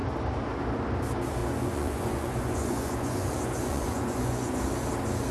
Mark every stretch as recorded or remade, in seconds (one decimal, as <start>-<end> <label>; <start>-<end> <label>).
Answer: 0.0-1.4 recorded; 1.4-4.6 remade; 4.6-5.3 recorded